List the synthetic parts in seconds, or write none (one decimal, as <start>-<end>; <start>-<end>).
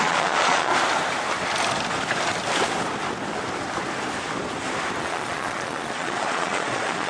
0.0-0.7; 5.0-7.1